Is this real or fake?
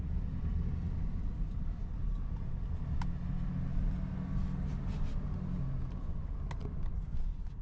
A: real